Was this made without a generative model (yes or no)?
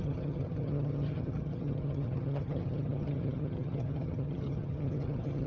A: no